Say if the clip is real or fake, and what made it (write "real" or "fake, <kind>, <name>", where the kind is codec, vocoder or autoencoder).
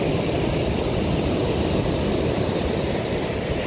real